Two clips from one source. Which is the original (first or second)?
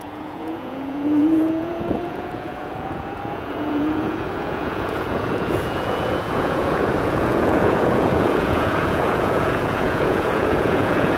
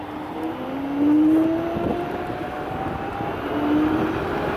second